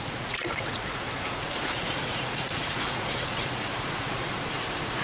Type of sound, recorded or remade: remade